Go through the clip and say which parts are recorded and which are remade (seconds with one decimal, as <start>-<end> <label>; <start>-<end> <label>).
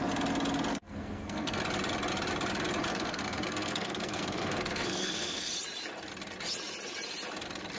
0.0-0.7 recorded; 0.7-1.6 remade; 1.6-2.9 recorded; 2.9-5.5 remade; 5.5-7.8 recorded